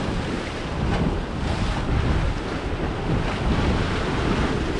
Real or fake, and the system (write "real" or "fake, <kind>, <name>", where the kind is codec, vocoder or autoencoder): real